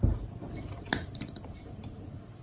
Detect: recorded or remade remade